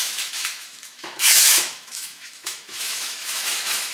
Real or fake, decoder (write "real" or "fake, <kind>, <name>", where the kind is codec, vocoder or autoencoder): fake, autoencoder, DAC-VAE